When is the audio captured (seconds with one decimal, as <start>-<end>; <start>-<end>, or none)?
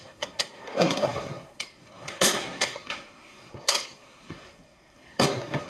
none